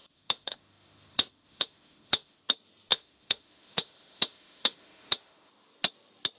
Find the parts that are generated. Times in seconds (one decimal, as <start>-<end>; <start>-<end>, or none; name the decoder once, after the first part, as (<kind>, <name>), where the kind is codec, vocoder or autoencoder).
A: 0.0-2.4 (autoencoder, DAC-VAE); 2.9-5.5

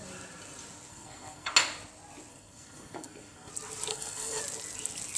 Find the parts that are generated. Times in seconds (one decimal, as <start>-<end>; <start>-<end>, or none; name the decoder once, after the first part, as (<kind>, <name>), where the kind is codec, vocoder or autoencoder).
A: 0.9-1.5 (codec, SNAC); 2.3-3.5; 3.9-4.4

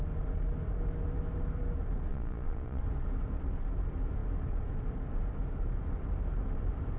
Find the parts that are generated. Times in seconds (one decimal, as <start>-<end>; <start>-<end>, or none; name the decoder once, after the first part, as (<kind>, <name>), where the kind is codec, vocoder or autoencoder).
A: 2.1-2.8 (vocoder, Vocos)